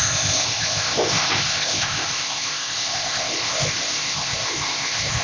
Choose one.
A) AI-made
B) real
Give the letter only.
A